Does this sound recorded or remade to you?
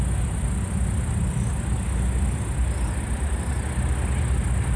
recorded